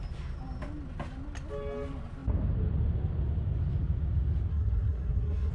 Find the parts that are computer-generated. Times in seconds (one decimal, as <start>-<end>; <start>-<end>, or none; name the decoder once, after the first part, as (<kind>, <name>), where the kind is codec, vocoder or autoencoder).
4.5-5.5 (codec, SNAC)